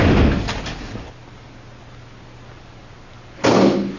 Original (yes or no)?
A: yes